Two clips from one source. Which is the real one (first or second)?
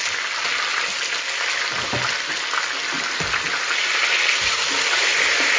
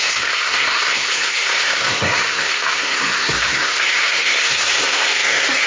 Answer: first